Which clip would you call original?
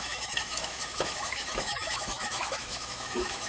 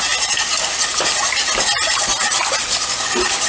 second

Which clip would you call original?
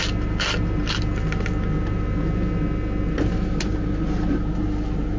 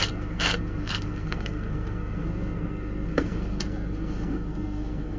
first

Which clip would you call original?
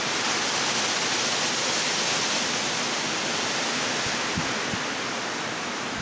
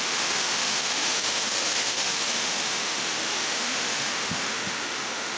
first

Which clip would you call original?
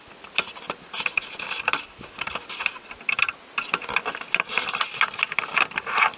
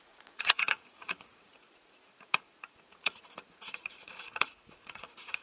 first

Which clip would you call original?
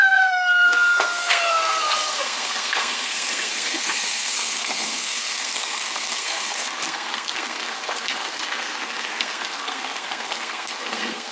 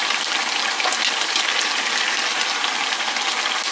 second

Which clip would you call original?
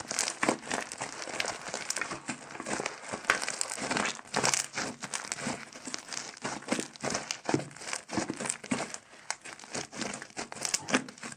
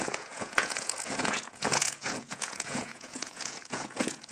first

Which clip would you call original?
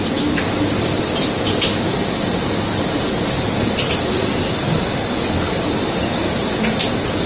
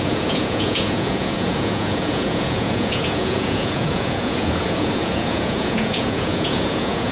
first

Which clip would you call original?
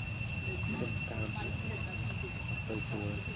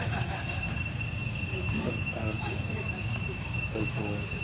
first